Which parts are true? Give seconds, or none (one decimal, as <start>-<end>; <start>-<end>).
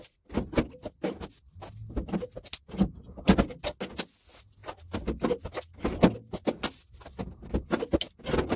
0.0-8.6